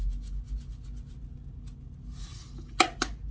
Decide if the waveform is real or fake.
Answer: real